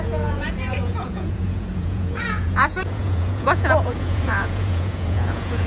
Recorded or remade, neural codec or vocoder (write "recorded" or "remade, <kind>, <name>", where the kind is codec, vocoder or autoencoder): remade, vocoder, Vocos